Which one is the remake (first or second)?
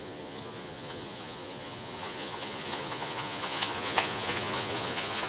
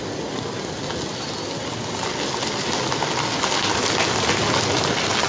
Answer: first